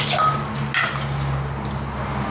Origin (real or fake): real